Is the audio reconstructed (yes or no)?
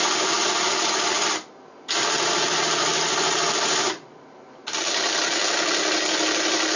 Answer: no